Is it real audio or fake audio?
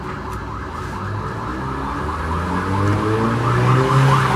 real